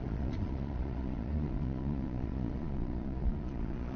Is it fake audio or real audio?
fake